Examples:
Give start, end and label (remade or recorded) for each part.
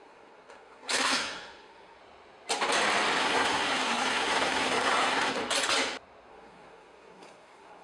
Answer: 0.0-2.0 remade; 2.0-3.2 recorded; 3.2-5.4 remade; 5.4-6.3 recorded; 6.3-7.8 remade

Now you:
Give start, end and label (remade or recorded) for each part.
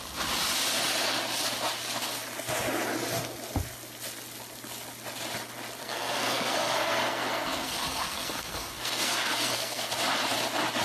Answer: 0.0-5.8 recorded; 5.8-9.9 remade; 9.9-10.8 recorded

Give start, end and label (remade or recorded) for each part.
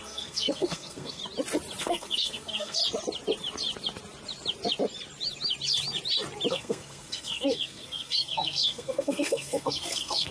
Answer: 0.0-1.2 remade; 1.2-1.8 recorded; 1.8-2.8 remade; 2.8-6.5 recorded; 6.5-10.3 remade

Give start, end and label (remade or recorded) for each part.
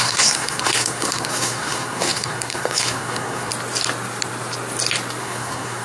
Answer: 0.0-3.5 remade; 3.5-5.2 recorded; 5.2-5.8 remade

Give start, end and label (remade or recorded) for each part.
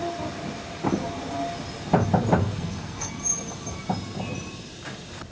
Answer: 0.0-2.4 recorded; 2.4-3.2 remade; 3.2-5.3 recorded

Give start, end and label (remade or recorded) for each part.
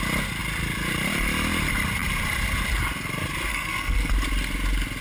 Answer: 0.0-3.5 recorded; 3.5-4.1 remade; 4.1-5.0 recorded